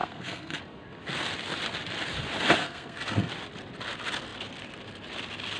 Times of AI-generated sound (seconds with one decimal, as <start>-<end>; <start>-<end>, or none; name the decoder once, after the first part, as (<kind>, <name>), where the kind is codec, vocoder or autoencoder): 0.0-0.6 (codec, SNAC); 2.6-3.3